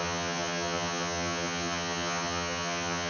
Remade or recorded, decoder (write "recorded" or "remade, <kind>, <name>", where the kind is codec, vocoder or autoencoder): remade, vocoder, HiFi-GAN